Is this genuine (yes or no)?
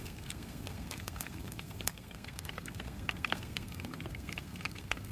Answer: no